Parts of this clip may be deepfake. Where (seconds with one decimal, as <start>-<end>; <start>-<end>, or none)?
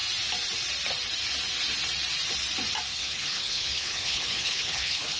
2.9-5.2